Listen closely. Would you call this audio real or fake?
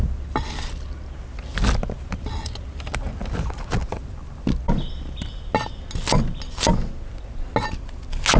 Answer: real